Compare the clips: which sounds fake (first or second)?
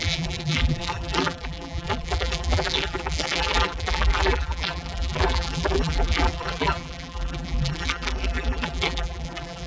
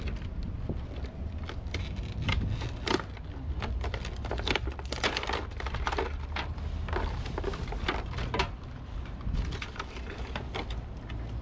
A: first